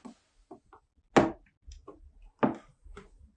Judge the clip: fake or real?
real